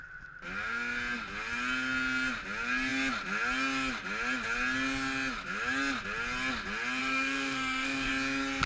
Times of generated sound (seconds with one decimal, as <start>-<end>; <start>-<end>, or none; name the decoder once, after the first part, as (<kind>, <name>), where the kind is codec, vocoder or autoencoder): 7.0-8.1 (codec, SNAC)

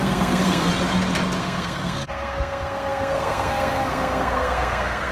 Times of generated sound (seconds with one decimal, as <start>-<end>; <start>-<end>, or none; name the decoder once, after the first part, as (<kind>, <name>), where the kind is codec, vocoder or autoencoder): 0.0-0.7 (codec, SNAC); 1.4-5.1